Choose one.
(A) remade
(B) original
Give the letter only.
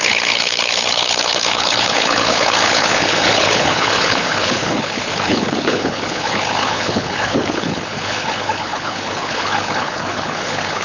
A